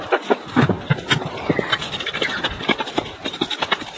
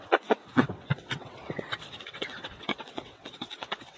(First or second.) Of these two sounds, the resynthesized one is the second